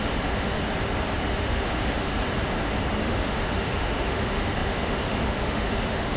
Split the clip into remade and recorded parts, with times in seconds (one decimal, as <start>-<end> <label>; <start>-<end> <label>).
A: 0.0-0.6 remade; 0.6-1.3 recorded; 1.3-2.1 remade; 2.1-3.0 recorded; 3.0-6.2 remade